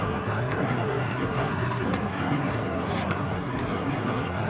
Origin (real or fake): fake